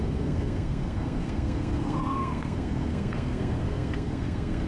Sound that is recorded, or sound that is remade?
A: remade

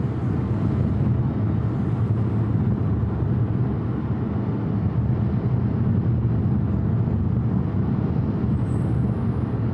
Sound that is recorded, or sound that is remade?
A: recorded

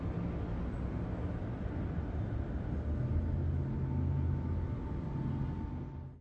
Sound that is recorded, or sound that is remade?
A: recorded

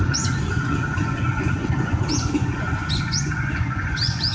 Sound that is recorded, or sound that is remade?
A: remade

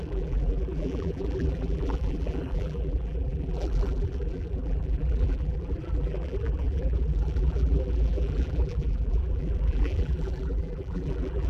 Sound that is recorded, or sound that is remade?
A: remade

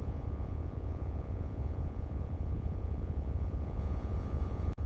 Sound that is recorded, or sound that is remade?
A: remade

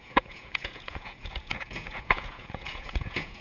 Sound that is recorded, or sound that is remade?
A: remade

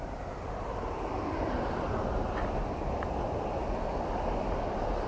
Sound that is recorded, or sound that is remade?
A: recorded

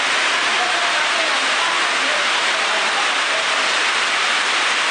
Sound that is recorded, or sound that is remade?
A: recorded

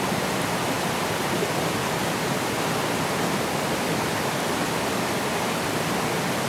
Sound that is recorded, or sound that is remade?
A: recorded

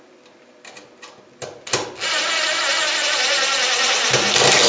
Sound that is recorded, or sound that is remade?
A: recorded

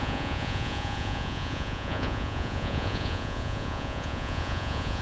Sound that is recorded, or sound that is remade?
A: remade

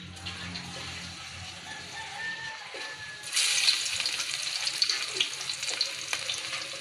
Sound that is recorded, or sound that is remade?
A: recorded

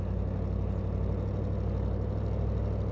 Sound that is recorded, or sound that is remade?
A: recorded